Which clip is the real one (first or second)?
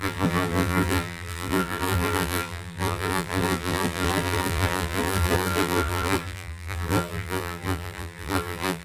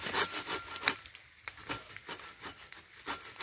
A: second